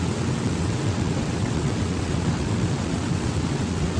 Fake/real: fake